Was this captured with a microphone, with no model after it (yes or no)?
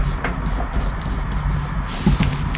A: yes